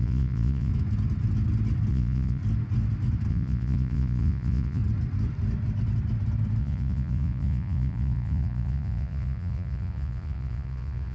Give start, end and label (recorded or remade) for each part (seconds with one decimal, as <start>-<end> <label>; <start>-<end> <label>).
0.0-0.7 remade; 0.7-1.9 recorded; 1.9-2.4 remade; 2.4-3.3 recorded; 3.3-4.8 remade; 4.8-6.6 recorded; 6.6-11.1 remade